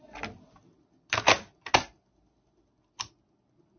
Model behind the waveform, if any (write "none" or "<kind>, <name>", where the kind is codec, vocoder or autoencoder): none